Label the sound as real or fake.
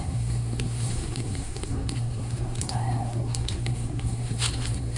fake